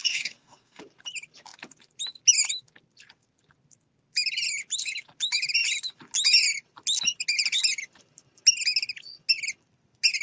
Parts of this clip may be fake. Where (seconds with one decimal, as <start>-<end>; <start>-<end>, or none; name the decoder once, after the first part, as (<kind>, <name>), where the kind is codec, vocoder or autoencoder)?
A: 0.0-0.8 (codec, DAC)